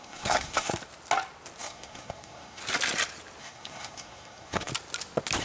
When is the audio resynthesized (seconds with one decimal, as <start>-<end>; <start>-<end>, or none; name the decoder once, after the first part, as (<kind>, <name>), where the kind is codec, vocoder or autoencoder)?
0.0-0.7 (codec, SNAC); 1.6-2.6; 3.4-4.7